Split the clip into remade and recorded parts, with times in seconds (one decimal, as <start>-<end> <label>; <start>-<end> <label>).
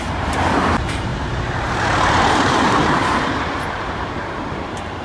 0.0-5.0 remade